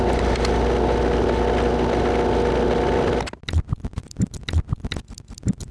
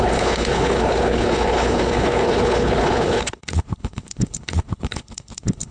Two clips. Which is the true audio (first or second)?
first